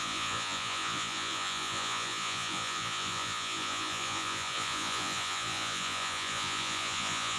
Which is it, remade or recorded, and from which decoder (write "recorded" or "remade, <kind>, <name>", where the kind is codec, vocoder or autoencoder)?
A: remade, vocoder, Vocos